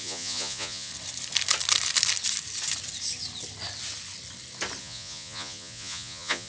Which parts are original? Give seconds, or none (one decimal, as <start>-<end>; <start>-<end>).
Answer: 0.9-4.8